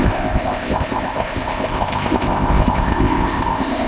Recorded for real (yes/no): no